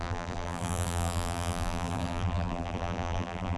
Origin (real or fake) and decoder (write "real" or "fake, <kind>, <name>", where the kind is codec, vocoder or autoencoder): fake, vocoder, BigVGAN v2